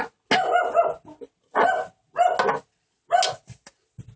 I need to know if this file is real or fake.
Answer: real